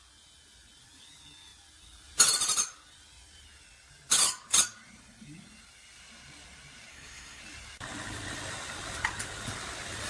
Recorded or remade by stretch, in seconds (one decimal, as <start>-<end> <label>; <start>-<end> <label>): 0.0-6.9 recorded; 6.9-7.4 remade; 7.4-10.1 recorded